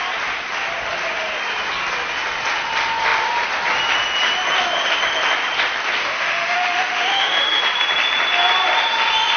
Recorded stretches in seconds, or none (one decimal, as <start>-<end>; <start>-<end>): 0.0-6.0; 7.6-9.4